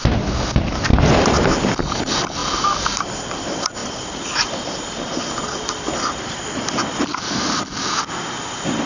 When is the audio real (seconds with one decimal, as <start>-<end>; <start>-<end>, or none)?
0.9-1.8; 2.4-3.1

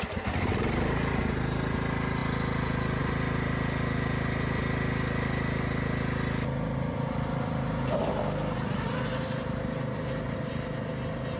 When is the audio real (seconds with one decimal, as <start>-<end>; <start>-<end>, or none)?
0.0-0.5; 1.2-11.4

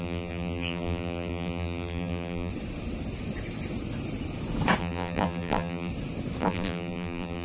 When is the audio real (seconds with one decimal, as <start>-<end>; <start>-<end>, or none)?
2.5-4.8; 5.9-6.4

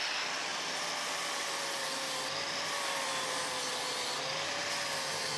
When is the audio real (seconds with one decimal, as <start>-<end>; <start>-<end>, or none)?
0.5-1.0